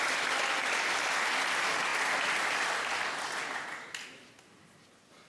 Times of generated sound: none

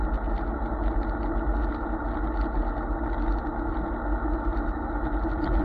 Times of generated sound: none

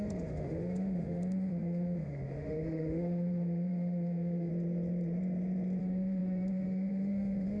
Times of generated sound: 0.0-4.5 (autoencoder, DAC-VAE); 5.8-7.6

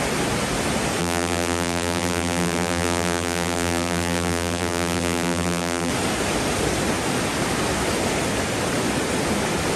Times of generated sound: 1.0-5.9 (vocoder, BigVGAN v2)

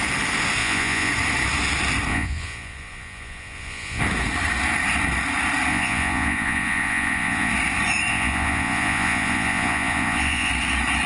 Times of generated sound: 0.6-1.1 (vocoder, Vocos); 2.1-4.0; 5.7-7.5; 8.1-10.5

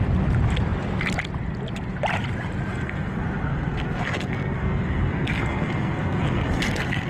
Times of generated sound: 2.7-7.1 (codec, SNAC)

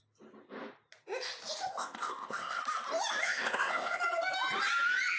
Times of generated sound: 1.7-2.6 (codec, ZipCodec); 3.2-4.0

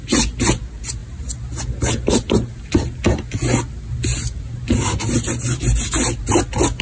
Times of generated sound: none